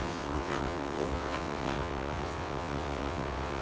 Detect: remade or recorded remade